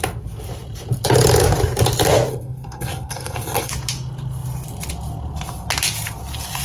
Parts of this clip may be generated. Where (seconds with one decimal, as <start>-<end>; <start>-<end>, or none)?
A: 2.3-3.7